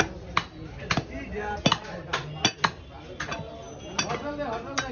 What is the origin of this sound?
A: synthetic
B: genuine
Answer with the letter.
B